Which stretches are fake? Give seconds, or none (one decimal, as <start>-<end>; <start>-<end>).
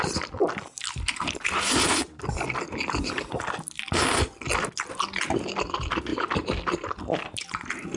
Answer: none